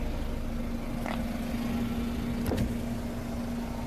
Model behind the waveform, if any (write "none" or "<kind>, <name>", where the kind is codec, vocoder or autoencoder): none